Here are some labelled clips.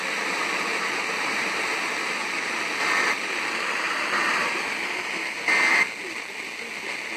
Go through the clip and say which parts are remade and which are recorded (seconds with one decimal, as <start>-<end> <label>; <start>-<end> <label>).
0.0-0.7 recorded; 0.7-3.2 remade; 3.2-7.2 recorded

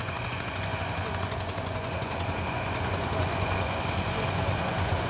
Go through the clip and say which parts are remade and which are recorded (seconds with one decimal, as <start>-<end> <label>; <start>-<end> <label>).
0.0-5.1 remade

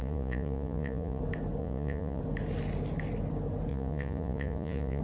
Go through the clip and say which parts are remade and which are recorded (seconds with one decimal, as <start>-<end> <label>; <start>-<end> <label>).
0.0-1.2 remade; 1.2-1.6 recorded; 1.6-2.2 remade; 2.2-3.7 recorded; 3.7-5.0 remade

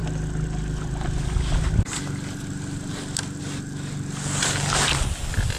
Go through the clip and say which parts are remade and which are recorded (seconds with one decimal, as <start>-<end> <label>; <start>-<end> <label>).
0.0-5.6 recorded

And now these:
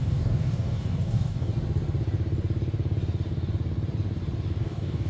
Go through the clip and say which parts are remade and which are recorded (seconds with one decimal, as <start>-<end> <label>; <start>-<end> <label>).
0.0-1.5 remade; 1.5-4.6 recorded; 4.6-5.1 remade

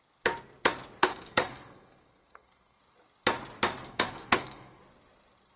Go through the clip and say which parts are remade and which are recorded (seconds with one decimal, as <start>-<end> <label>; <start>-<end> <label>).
0.0-1.0 recorded; 1.0-2.8 remade; 2.8-3.8 recorded; 3.8-4.8 remade; 4.8-5.6 recorded

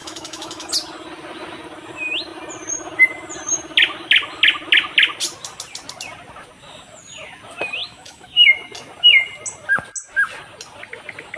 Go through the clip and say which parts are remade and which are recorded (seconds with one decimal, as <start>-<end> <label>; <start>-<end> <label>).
0.0-0.7 remade; 0.7-7.8 recorded; 7.8-8.5 remade; 8.5-11.4 recorded